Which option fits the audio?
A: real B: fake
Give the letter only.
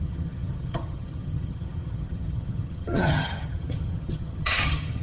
B